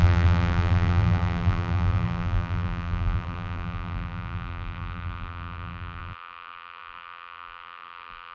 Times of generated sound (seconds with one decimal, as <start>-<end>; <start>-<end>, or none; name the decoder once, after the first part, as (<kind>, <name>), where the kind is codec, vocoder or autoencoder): 0.0-8.3 (vocoder, BigVGAN v2)